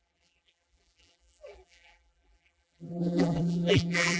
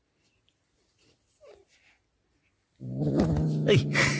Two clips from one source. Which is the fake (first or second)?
first